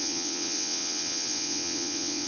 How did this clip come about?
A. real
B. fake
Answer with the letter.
B